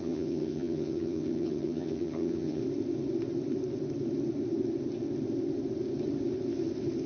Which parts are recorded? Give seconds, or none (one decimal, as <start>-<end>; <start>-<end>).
2.6-7.1